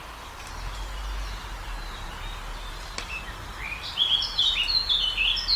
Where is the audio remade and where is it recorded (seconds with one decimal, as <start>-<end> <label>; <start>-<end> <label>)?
0.0-2.5 recorded; 2.5-3.2 remade; 3.2-5.6 recorded